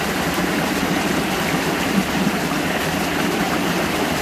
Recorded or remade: remade